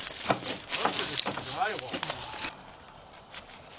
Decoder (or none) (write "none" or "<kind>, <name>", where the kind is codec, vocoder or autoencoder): vocoder, BigVGAN v2